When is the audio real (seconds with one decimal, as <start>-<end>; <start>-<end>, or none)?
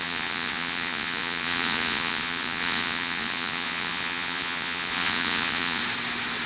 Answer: 5.8-6.5